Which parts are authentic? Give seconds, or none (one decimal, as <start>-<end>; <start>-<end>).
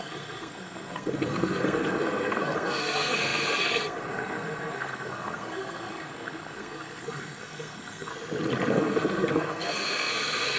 8.1-8.7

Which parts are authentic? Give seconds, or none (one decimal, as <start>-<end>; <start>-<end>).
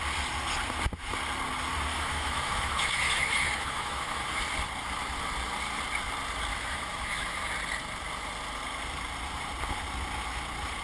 0.0-1.9; 4.4-6.5; 7.5-10.8